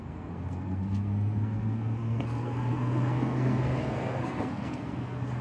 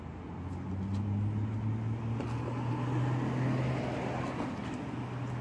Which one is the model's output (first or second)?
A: first